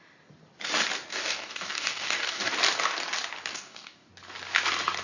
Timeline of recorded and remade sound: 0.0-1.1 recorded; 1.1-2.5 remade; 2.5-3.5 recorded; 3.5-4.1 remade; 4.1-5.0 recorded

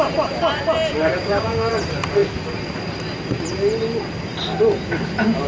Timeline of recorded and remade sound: 0.0-1.1 recorded; 1.1-1.7 remade; 1.7-5.5 recorded

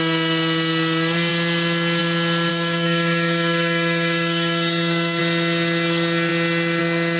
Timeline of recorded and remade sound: 0.0-2.5 recorded; 2.5-5.2 remade; 5.2-7.2 recorded